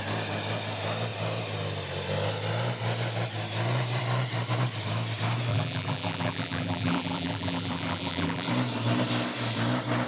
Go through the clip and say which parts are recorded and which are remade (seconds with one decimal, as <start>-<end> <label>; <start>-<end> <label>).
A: 0.0-5.5 recorded; 5.5-8.5 remade; 8.5-10.1 recorded